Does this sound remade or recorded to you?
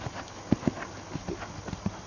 recorded